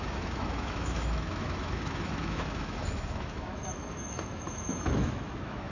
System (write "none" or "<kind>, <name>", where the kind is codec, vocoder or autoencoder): autoencoder, DAC-VAE